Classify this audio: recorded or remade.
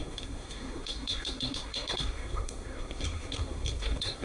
remade